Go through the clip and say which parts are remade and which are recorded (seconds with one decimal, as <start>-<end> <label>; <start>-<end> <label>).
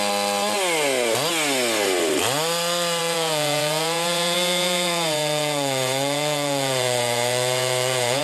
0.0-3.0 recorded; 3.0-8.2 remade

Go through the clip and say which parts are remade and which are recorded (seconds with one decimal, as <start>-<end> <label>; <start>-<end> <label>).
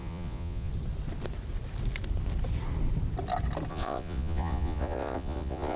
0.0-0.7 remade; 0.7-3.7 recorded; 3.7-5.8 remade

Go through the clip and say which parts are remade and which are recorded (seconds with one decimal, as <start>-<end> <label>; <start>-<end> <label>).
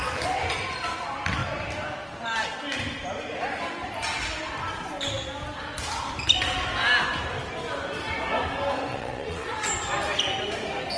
0.0-8.9 recorded; 8.9-9.5 remade; 9.5-11.0 recorded